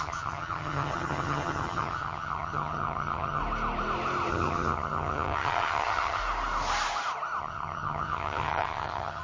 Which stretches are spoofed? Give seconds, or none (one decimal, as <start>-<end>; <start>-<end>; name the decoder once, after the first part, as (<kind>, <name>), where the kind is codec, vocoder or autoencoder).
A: 0.0-3.4 (vocoder, HiFi-GAN); 4.3-6.2; 7.4-9.2